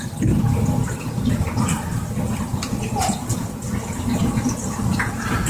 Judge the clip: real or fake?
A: real